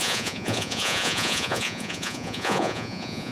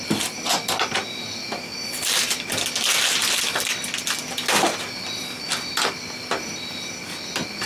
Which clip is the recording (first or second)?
second